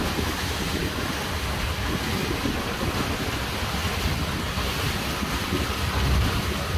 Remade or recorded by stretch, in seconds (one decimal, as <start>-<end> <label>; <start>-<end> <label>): 0.0-6.8 recorded